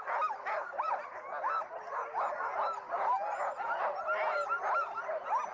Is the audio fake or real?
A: real